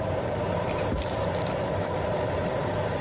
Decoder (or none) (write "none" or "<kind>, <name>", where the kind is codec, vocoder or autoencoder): none